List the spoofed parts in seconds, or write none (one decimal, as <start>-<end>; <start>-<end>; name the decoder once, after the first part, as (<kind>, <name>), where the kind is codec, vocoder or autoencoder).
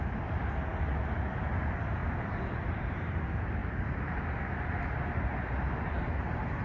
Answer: none